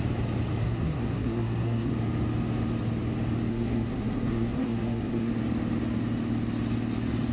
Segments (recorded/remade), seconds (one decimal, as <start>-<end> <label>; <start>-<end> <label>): 0.0-0.6 recorded; 0.6-1.9 remade; 1.9-3.5 recorded; 3.5-5.3 remade; 5.3-7.3 recorded